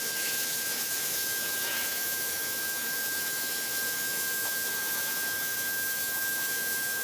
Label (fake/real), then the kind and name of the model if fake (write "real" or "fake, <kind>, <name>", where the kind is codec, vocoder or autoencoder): fake, autoencoder, DAC-VAE